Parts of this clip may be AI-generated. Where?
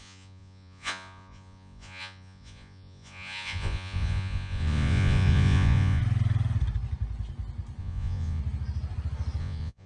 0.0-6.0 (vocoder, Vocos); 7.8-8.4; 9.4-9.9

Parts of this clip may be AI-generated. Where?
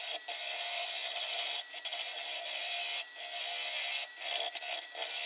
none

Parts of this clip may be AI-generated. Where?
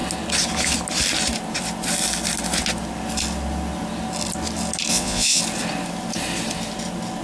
4.9-5.4 (vocoder, Vocos)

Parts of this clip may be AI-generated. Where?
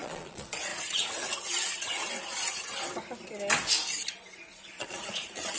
0.0-0.7 (vocoder, Vocos); 4.1-5.6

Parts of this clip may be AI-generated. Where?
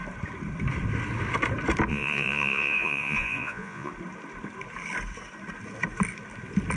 1.9-3.9 (vocoder, Vocos)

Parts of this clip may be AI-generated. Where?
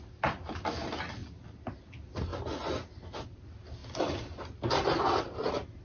none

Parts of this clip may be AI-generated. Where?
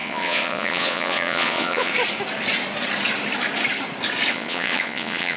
0.0-1.9 (vocoder, Vocos); 4.3-5.4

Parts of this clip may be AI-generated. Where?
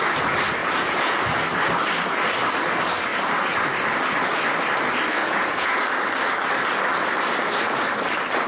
0.6-1.2 (vocoder, Vocos); 5.2-5.8